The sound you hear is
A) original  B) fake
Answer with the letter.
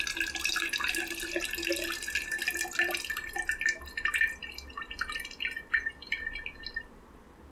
A